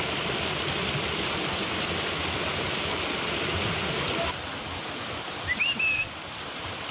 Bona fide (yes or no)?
yes